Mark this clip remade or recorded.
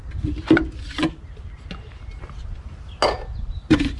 recorded